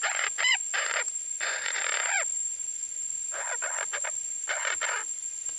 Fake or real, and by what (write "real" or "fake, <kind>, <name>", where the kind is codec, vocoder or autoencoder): fake, vocoder, Vocos